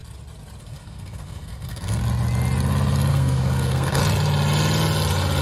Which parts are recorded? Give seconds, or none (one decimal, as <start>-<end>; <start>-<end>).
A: 0.0-0.6; 2.0-3.1; 4.0-5.4